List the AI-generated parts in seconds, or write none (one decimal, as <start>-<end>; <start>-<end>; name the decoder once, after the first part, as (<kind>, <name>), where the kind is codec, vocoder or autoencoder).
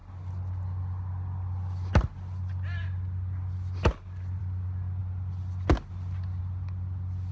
none